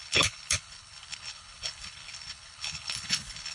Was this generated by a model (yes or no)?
yes